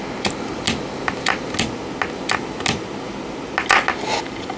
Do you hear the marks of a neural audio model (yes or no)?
no